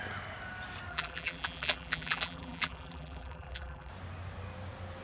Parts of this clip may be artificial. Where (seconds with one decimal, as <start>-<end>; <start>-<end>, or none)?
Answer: 0.9-3.9